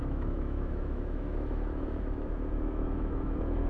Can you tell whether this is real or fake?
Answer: fake